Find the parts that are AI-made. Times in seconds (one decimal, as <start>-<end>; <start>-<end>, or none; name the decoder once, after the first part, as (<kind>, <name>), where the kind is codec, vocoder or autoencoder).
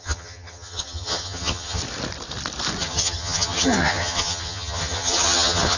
0.0-1.8 (vocoder, HiFi-GAN); 2.8-5.8